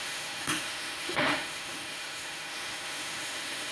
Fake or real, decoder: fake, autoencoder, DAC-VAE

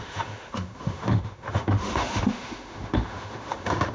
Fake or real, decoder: fake, autoencoder, DAC-VAE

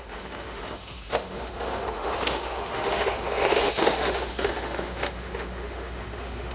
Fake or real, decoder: fake, autoencoder, DAC-VAE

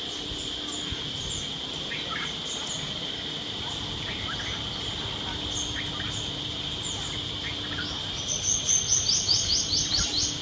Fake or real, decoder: real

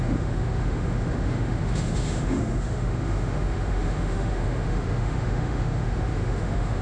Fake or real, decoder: fake, autoencoder, DAC-VAE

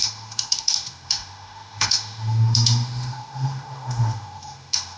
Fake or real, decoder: fake, autoencoder, DAC-VAE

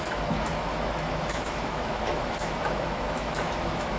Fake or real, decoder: fake, autoencoder, DAC-VAE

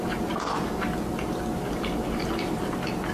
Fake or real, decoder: real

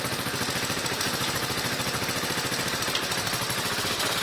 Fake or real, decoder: real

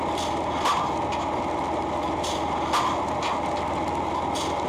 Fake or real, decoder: real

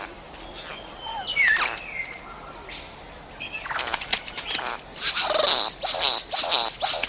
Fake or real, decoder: real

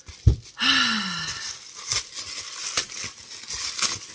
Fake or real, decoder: real